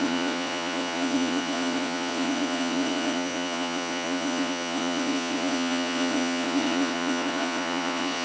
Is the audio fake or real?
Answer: fake